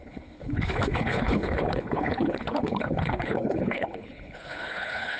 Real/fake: fake